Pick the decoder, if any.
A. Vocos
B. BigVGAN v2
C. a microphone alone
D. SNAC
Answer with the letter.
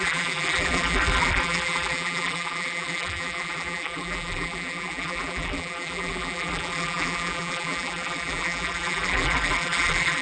B